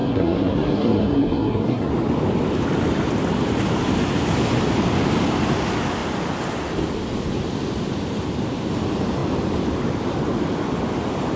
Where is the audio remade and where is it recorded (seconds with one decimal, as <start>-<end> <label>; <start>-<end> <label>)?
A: 0.0-1.9 remade; 1.9-11.4 recorded